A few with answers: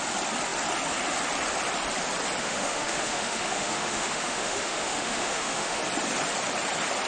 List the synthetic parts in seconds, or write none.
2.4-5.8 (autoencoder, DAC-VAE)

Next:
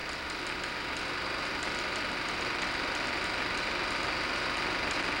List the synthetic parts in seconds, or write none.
none